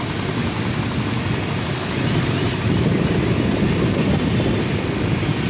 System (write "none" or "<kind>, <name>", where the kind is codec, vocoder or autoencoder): none